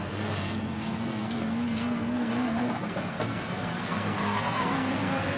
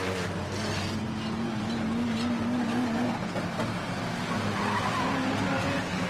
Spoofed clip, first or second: first